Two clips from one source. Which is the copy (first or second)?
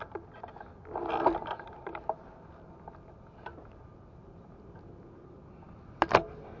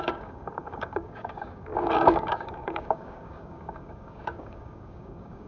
second